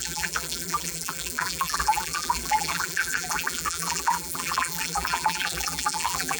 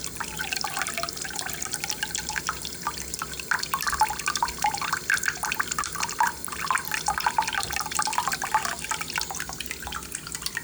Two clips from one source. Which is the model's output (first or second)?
first